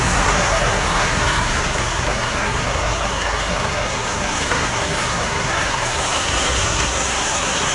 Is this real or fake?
fake